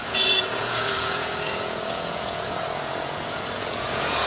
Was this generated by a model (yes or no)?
yes